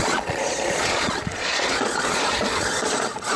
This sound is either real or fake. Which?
fake